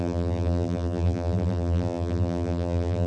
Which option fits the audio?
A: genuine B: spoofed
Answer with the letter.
B